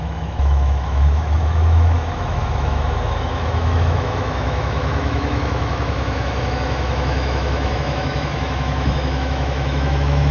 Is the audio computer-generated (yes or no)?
yes